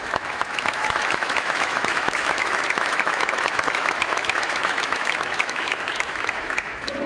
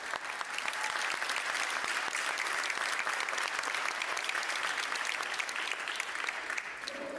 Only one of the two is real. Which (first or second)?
second